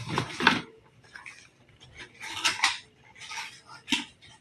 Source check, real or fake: fake